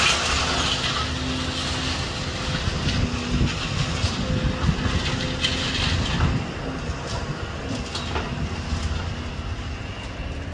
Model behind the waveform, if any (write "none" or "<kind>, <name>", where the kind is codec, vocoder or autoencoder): none